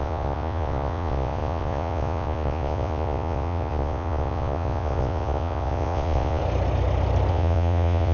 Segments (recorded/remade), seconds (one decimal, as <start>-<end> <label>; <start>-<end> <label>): 0.0-6.4 remade; 6.4-7.3 recorded; 7.3-8.1 remade